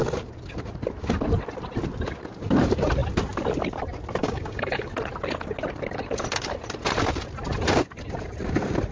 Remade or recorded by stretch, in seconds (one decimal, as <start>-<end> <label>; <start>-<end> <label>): 0.0-4.2 recorded; 4.2-4.9 remade; 4.9-8.9 recorded